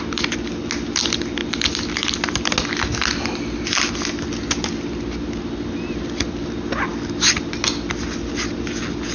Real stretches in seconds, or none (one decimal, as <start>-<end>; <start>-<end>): 0.0-9.1